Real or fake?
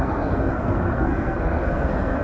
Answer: fake